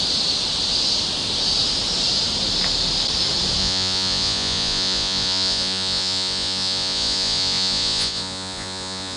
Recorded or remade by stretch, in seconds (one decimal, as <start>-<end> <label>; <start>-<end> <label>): 0.0-3.6 recorded; 3.6-9.2 remade